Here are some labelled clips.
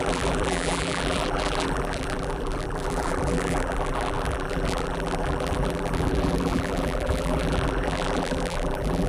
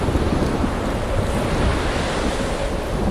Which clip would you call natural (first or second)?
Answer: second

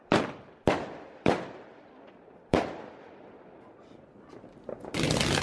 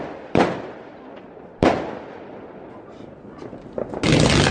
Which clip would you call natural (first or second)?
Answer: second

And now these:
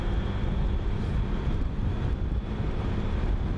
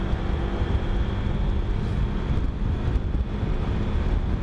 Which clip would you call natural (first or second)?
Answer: second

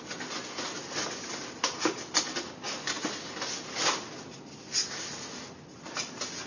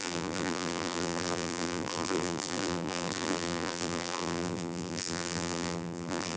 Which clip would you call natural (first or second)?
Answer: first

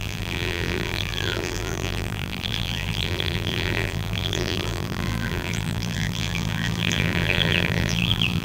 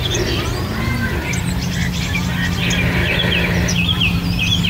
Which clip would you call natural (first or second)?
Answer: second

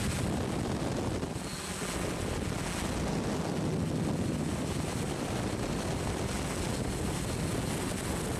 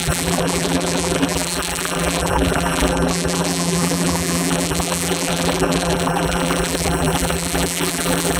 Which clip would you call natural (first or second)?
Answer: first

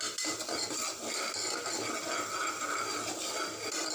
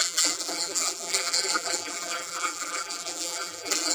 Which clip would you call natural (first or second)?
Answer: first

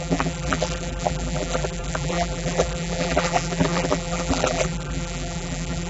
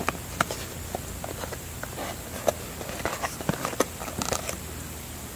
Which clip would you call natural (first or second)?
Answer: second